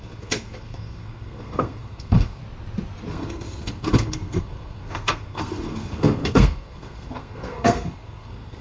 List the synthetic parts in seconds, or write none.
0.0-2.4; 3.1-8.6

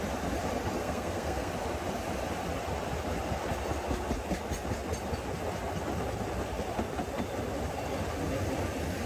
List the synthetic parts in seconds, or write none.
0.8-1.5

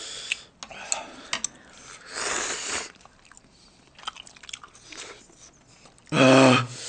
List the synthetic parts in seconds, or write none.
none